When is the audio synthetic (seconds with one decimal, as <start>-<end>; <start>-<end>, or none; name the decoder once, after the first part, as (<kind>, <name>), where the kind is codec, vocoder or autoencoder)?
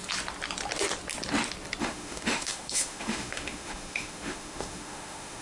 1.8-5.4 (autoencoder, DAC-VAE)